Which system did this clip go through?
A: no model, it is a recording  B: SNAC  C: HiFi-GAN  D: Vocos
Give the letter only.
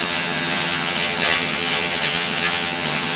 C